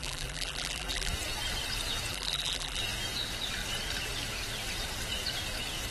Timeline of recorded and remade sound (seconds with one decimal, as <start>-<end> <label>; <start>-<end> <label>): 0.0-1.1 remade; 1.1-2.1 recorded; 2.1-2.8 remade; 2.8-5.9 recorded